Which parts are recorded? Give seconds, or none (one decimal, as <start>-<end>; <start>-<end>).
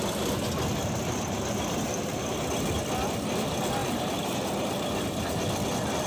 0.0-0.8; 2.3-3.8; 5.4-6.1